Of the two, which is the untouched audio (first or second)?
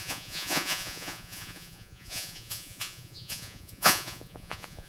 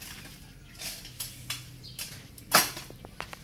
second